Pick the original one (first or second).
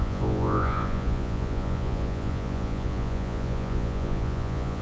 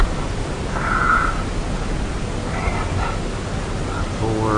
second